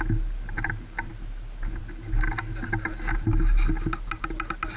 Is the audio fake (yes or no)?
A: no